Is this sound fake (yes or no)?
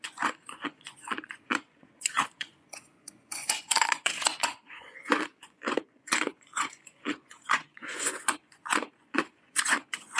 yes